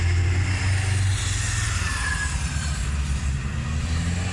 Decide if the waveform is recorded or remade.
recorded